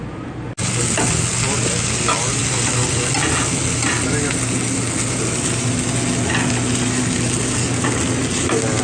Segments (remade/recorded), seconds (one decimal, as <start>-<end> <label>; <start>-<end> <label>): 0.0-8.8 recorded